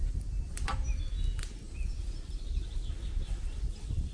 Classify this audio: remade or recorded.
recorded